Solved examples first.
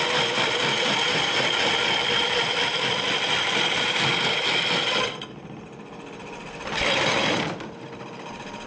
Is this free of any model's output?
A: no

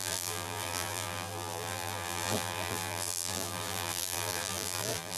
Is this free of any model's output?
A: no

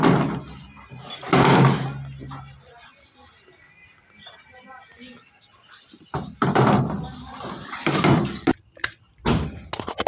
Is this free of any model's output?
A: yes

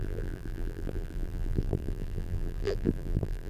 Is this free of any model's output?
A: no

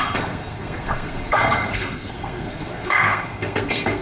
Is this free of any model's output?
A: no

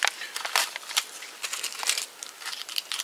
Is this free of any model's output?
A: yes